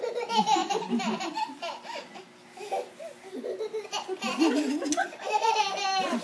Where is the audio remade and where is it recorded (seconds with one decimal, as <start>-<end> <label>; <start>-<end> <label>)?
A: 0.0-5.0 recorded; 5.0-5.6 remade; 5.6-6.2 recorded